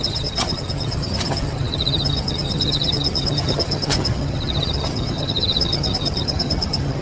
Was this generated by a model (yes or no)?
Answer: yes